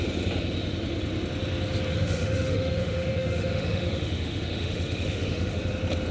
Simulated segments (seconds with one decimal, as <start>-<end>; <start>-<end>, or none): 1.9-5.6

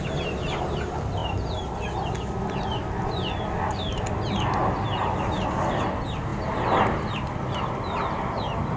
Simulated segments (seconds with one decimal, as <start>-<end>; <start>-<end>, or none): none

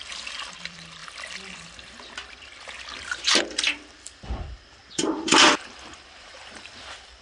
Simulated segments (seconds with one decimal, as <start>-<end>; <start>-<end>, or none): 0.0-1.0; 3.4-7.2

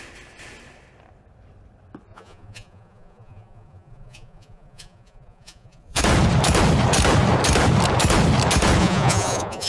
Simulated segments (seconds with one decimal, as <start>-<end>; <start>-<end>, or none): 2.1-6.0; 8.8-9.7

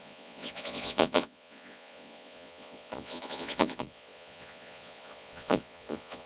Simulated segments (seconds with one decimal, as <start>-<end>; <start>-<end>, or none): 0.0-6.3

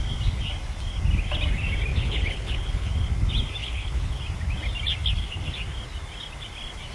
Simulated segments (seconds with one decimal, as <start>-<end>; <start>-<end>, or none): 1.9-2.9; 3.6-4.2

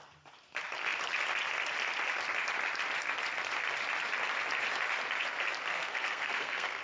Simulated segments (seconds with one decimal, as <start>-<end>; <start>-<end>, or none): 5.7-6.8

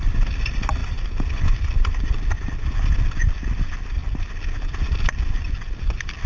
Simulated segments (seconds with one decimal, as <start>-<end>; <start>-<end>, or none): none